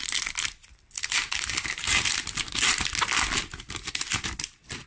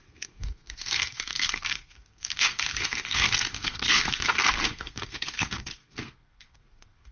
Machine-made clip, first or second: second